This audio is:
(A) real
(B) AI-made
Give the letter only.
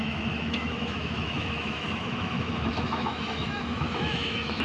B